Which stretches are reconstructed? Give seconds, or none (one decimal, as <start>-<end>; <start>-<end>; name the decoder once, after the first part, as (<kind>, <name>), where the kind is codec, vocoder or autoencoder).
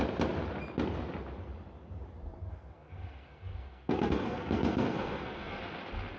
2.5-5.6 (codec, SNAC)